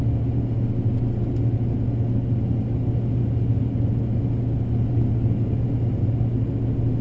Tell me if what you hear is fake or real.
real